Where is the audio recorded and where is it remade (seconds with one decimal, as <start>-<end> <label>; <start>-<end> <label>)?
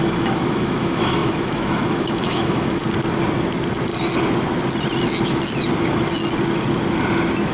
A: 0.0-2.8 remade; 2.8-7.5 recorded